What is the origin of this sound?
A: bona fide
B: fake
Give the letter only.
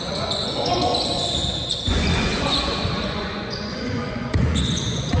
B